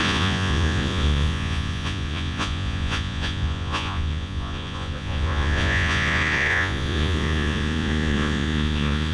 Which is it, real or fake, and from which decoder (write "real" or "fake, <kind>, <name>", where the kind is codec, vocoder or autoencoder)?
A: fake, vocoder, Vocos